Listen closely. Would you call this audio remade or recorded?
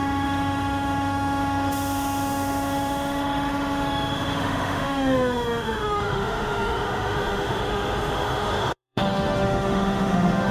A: remade